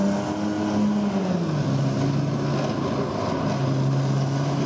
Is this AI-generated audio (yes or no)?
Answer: no